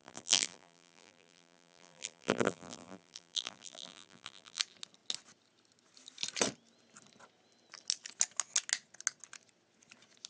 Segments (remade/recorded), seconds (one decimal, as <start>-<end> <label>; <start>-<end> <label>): 0.0-4.6 remade; 4.6-10.3 recorded